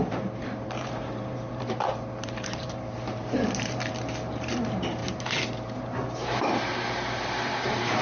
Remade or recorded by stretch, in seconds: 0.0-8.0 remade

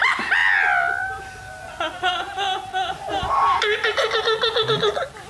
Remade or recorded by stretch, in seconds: 0.0-5.3 recorded

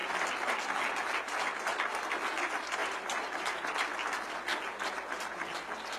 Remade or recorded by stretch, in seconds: 0.0-2.8 recorded; 2.8-3.7 remade; 3.7-6.0 recorded

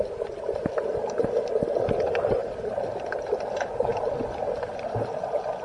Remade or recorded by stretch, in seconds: 0.0-5.6 recorded